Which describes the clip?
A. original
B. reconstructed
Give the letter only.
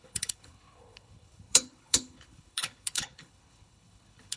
B